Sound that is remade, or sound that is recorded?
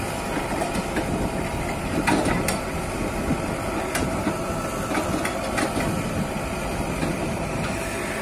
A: recorded